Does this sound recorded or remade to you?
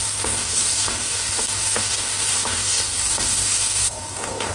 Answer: remade